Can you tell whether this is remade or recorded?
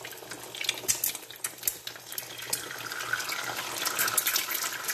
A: recorded